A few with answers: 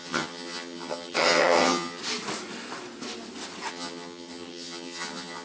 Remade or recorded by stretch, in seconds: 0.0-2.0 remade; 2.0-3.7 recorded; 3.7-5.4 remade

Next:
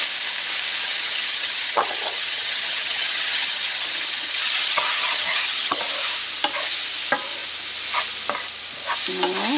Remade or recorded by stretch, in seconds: 0.0-0.8 recorded; 0.8-5.8 remade; 5.8-9.6 recorded